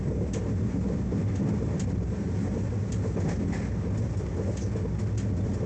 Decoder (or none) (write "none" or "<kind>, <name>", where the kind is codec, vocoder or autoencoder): none